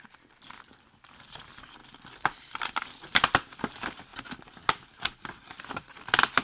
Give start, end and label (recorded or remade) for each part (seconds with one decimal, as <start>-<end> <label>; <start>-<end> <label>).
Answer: 0.0-4.1 remade; 4.1-5.3 recorded; 5.3-6.4 remade